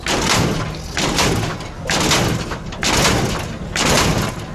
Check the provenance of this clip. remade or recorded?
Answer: recorded